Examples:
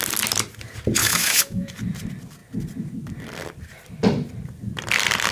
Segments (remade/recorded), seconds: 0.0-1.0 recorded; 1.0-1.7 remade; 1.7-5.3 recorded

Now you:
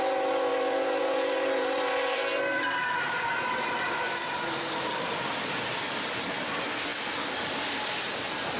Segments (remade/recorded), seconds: 0.0-0.5 recorded; 0.5-5.6 remade; 5.6-8.6 recorded

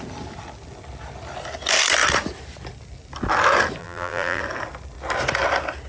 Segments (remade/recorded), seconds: 0.0-3.8 recorded; 3.8-4.4 remade; 4.4-5.9 recorded

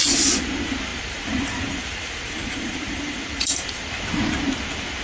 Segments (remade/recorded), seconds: 0.0-0.9 recorded; 0.9-3.9 remade; 3.9-5.0 recorded